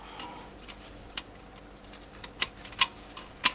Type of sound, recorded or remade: recorded